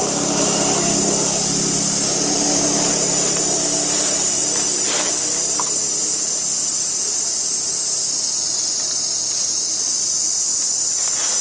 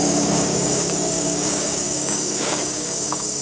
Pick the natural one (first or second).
first